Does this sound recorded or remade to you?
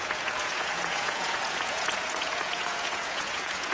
remade